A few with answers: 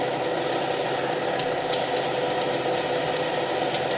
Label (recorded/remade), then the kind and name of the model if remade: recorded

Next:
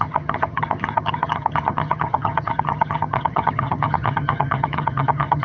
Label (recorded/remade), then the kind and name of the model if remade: remade, vocoder, HiFi-GAN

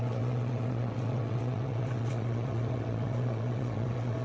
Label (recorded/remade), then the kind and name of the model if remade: remade, vocoder, WaveNeXt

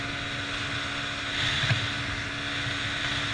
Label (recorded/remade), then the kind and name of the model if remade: recorded